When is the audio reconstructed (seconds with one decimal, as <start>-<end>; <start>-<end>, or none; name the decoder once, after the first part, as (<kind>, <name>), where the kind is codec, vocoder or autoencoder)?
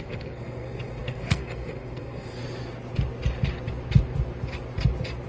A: 0.0-2.4 (codec, SNAC)